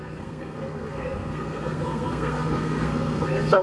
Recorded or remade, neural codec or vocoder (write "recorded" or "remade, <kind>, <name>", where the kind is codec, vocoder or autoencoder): remade, codec, SNAC